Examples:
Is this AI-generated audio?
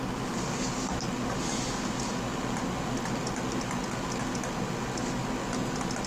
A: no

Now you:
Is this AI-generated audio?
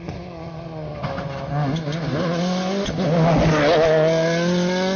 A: no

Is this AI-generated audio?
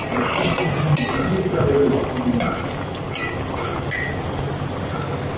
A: no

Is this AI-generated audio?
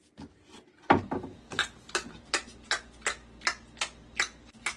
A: no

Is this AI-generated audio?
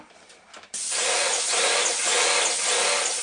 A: no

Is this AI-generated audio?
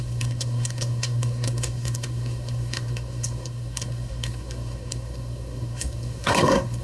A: yes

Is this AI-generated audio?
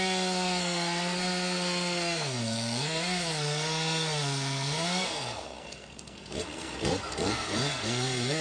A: yes